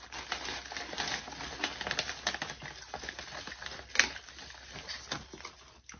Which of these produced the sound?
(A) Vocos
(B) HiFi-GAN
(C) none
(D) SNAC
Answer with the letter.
C